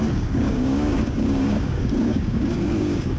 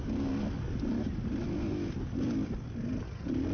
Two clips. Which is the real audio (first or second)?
second